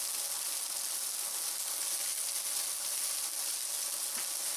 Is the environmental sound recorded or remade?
recorded